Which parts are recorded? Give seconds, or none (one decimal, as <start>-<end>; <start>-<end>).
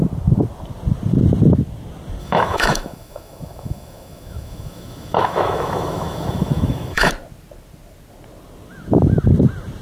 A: 0.0-2.2; 7.1-9.8